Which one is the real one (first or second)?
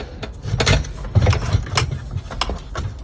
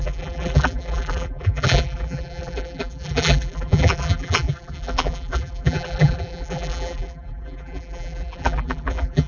first